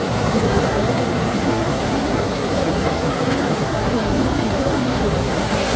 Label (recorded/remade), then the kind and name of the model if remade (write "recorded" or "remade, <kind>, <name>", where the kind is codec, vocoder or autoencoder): remade, codec, SNAC